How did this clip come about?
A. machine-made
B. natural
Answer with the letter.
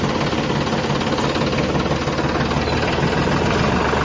B